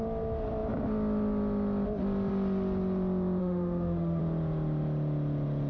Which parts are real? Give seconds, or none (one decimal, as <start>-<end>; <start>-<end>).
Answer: 0.0-3.4; 4.2-5.7